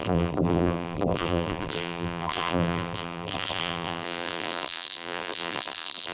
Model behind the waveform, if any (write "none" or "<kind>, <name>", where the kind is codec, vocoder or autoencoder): vocoder, BigVGAN v2